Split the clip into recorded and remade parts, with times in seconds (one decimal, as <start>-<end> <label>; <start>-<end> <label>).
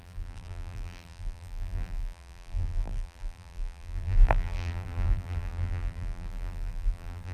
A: 0.0-7.3 remade